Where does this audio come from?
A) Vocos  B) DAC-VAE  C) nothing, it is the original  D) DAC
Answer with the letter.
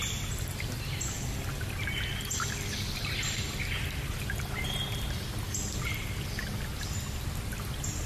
C